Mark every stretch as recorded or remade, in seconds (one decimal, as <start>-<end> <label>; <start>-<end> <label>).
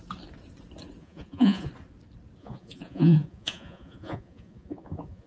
0.0-1.0 recorded; 1.0-1.7 remade; 1.7-2.4 recorded; 2.4-5.3 remade